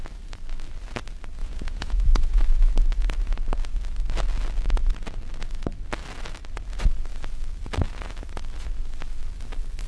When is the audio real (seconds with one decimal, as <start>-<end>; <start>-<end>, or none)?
0.0-1.4; 2.4-9.9